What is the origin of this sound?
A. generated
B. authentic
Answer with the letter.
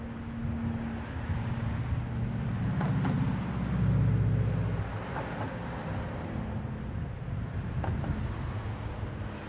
B